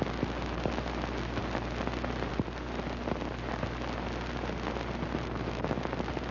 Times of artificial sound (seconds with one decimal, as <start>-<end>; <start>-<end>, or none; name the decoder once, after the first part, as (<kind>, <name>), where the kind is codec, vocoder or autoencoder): none